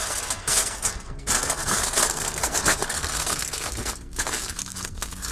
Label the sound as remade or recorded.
remade